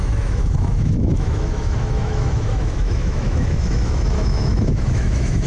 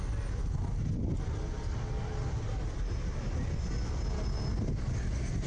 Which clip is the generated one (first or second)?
first